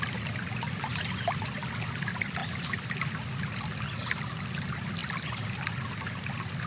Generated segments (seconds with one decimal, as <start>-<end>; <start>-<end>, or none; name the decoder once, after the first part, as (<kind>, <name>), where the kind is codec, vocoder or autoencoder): none